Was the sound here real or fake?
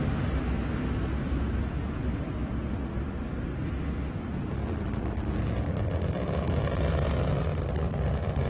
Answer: real